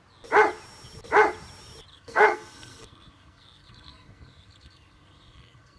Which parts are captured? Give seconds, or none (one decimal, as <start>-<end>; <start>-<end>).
0.0-1.9